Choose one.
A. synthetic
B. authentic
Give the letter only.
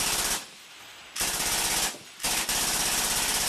B